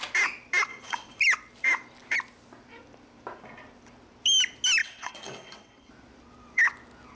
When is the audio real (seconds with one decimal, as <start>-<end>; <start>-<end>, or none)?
0.0-0.7; 1.2-4.8; 5.9-7.2